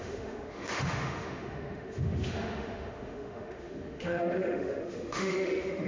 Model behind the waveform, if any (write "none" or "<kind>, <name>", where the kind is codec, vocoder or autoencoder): autoencoder, DAC-VAE